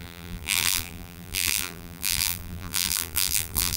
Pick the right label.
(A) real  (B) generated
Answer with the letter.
B